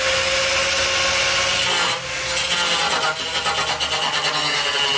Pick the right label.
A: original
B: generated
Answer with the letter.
A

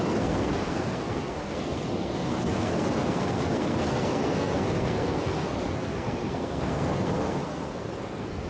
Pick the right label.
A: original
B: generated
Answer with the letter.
B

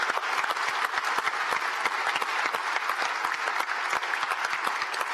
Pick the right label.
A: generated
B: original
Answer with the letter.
B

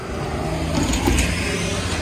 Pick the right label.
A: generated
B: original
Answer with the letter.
B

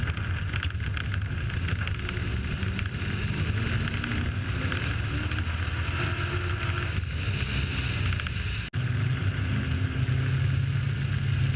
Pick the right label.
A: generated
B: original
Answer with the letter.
B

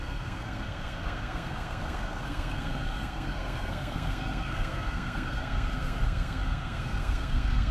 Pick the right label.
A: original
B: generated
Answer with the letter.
B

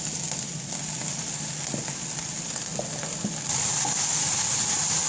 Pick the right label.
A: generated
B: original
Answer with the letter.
B